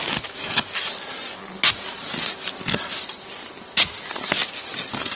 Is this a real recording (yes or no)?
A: yes